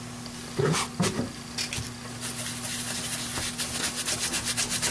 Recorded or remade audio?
recorded